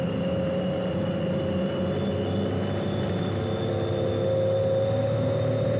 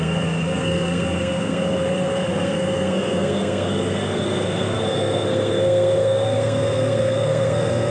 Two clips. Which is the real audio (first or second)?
first